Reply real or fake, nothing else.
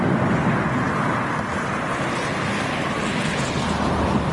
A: real